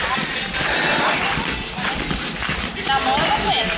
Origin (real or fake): real